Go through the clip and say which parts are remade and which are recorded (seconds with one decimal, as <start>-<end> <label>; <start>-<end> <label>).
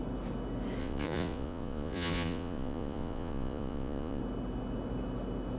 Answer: 0.0-0.8 recorded; 0.8-4.2 remade; 4.2-5.6 recorded